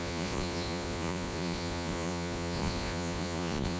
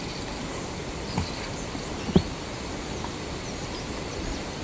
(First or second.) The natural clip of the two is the second